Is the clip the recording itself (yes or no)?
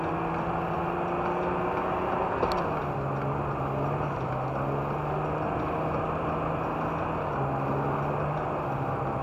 yes